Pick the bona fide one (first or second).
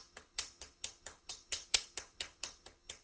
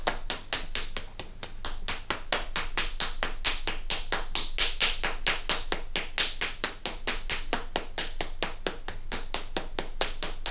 second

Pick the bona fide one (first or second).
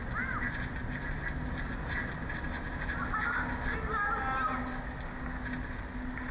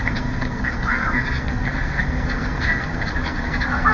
first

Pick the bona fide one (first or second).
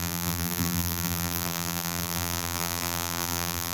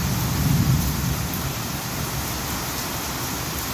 second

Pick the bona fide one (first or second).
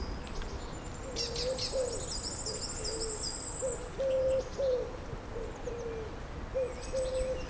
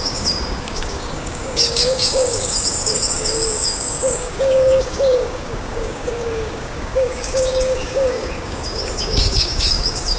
first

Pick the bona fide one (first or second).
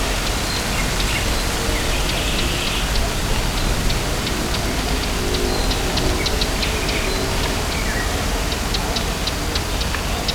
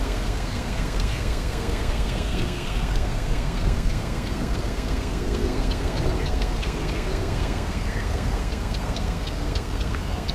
first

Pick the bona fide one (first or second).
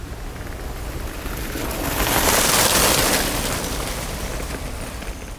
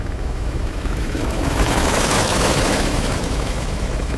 first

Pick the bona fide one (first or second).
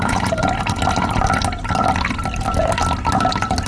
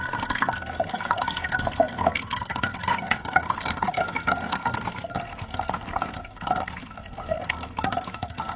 first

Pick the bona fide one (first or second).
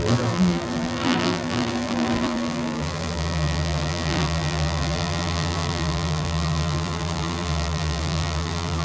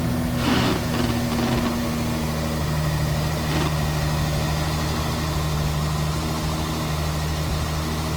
second